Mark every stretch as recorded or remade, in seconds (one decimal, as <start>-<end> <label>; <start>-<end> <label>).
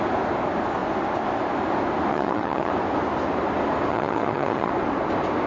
0.0-2.1 recorded; 2.1-2.7 remade; 2.7-3.9 recorded; 3.9-4.7 remade; 4.7-5.5 recorded